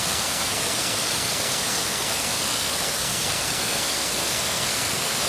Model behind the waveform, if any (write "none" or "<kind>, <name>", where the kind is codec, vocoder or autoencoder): codec, SNAC